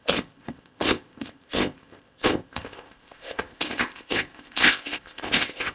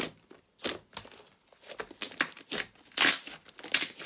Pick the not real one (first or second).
first